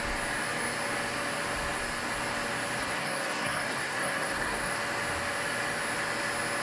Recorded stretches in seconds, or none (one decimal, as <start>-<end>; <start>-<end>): 0.0-2.8; 4.7-6.6